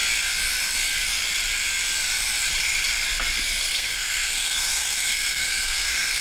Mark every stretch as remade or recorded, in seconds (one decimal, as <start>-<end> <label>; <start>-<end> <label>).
0.0-3.7 recorded; 3.7-6.2 remade